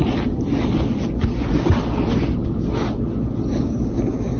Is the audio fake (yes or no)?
no